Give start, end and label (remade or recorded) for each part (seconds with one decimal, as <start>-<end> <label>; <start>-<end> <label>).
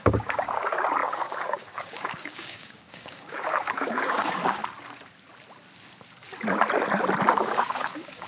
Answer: 0.0-4.6 remade; 4.6-7.4 recorded; 7.4-8.3 remade